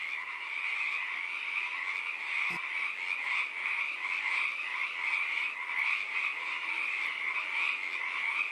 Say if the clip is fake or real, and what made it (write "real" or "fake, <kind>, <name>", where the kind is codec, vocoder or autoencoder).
real